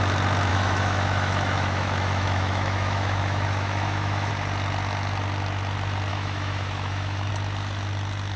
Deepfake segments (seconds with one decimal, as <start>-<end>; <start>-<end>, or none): 0.5-4.3; 6.1-7.3